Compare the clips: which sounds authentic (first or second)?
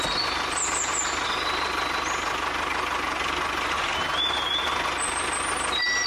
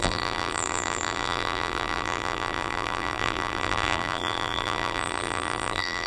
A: first